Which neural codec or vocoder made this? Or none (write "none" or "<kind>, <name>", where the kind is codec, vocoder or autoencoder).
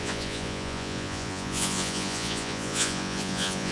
vocoder, Vocos